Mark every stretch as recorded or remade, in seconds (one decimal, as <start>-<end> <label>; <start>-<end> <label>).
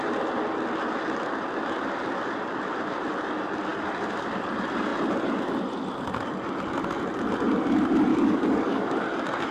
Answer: 0.0-8.1 recorded; 8.1-9.0 remade; 9.0-9.5 recorded